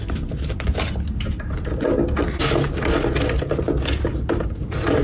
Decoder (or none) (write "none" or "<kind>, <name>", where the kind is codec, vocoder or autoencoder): none